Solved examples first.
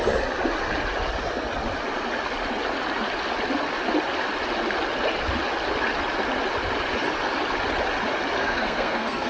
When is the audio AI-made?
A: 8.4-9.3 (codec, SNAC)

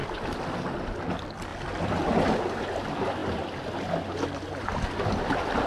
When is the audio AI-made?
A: none

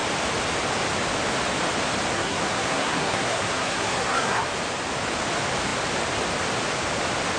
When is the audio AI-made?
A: 2.1-4.4 (codec, SNAC)

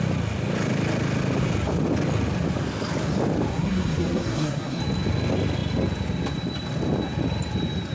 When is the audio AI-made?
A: 3.5-4.8 (codec, SNAC)

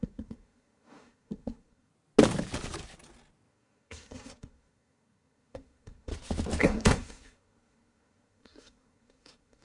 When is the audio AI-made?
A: 0.0-1.9 (codec, SNAC); 3.5-6.1; 6.6-9.6

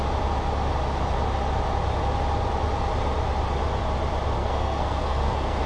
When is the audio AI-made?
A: 4.4-5.7 (codec, SNAC)

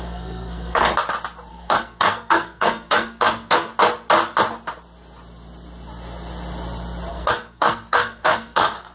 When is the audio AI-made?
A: 0.0-0.9 (codec, SNAC); 1.5-3.7; 7.1-8.9